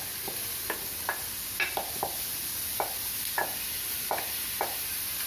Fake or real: real